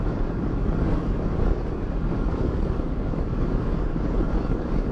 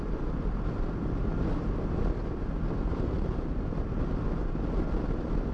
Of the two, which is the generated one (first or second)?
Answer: first